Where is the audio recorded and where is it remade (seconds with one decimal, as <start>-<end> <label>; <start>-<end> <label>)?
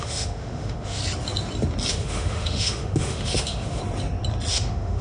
0.0-1.0 remade; 1.0-1.9 recorded; 1.9-3.8 remade; 3.8-4.5 recorded; 4.5-5.0 remade